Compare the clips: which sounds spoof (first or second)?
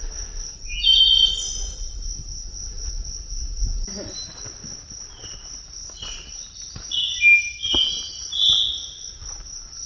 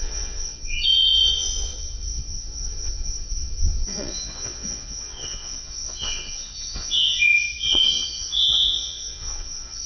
second